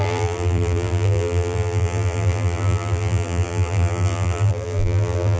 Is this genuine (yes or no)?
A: no